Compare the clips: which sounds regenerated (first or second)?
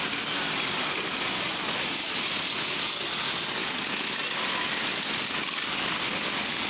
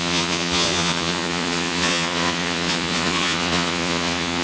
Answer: second